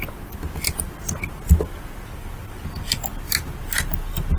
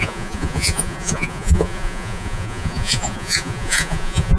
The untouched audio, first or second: first